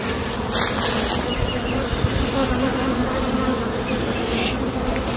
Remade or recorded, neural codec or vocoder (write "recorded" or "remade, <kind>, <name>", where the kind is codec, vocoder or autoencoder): recorded